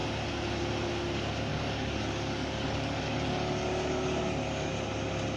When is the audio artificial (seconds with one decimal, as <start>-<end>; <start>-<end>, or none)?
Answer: 1.5-4.7